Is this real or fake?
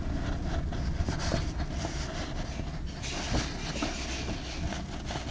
real